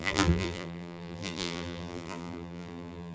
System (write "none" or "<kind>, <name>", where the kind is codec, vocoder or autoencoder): vocoder, BigVGAN v2